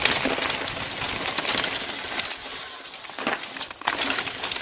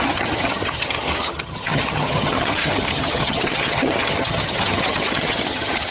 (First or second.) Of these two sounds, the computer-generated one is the second